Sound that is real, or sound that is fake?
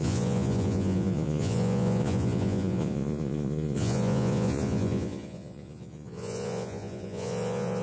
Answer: fake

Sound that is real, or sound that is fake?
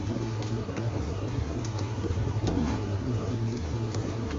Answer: fake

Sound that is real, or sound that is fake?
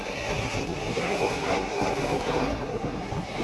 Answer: fake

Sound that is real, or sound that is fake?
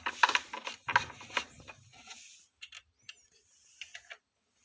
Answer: real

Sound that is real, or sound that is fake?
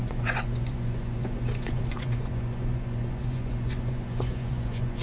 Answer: fake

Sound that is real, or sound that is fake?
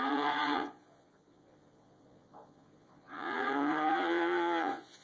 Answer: fake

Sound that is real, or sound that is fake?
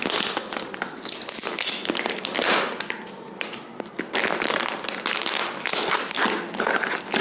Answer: real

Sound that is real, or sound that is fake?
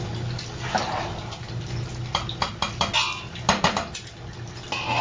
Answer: real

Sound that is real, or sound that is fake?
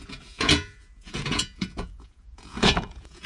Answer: fake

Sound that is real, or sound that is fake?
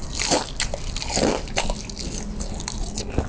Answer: real